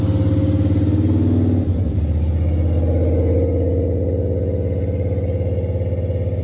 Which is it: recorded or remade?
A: recorded